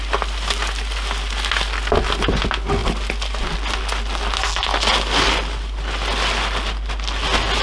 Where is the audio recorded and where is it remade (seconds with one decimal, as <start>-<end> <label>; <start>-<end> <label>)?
0.0-7.6 recorded